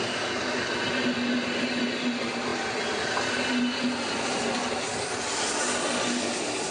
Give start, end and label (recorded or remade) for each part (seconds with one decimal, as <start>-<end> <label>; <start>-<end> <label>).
0.0-6.7 recorded